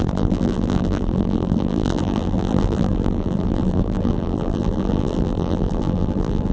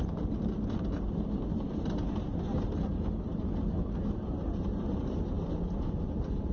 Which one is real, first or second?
second